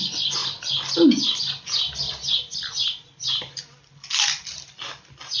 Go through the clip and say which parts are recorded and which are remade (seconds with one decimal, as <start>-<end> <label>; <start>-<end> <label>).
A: 0.0-0.4 remade; 0.4-3.6 recorded; 3.6-5.4 remade